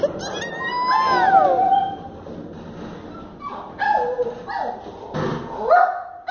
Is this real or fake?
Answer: real